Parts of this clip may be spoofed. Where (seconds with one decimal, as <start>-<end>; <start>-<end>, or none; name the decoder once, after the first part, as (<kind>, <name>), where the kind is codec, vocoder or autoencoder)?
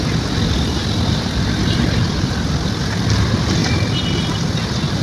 0.8-2.8 (vocoder, BigVGAN v2); 3.6-4.5